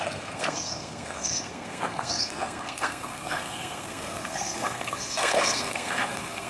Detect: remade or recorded remade